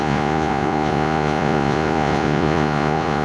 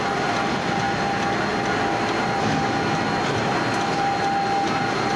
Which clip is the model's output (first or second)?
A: first